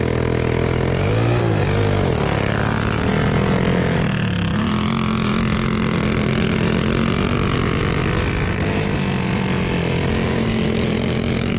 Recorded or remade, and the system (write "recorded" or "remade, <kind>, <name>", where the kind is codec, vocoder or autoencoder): recorded